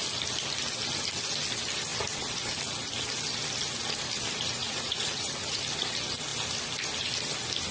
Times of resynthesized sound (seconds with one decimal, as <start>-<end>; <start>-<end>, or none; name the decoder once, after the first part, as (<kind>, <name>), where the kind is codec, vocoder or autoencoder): 4.6-5.6 (vocoder, Vocos)